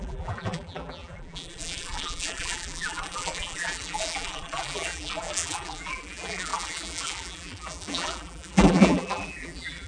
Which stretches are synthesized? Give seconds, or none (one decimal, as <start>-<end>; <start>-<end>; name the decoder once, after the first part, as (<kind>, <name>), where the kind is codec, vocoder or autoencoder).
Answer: 0.0-9.9 (vocoder, BigVGAN v2)